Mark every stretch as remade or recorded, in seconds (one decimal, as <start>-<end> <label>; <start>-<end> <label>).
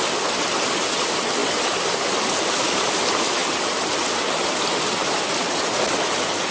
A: 0.0-6.5 recorded